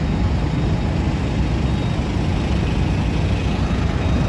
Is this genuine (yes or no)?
yes